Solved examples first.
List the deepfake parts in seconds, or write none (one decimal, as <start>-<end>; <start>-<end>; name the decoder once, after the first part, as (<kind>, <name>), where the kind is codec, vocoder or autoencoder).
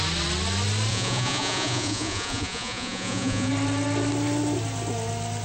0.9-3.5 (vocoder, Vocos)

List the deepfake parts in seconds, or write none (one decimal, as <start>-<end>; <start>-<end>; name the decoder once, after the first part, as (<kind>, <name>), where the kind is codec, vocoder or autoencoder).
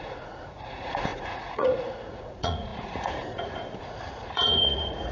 0.0-5.1 (vocoder, Vocos)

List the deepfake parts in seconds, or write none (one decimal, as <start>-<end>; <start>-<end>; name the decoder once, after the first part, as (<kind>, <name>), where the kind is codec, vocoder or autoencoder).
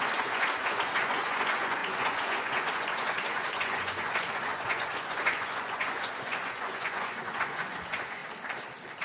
0.0-8.2 (vocoder, Vocos)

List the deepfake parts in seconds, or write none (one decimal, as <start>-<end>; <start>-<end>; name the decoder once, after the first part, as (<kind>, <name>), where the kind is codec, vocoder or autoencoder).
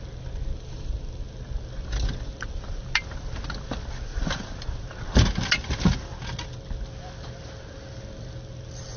none